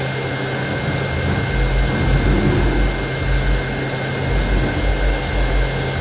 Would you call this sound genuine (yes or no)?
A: yes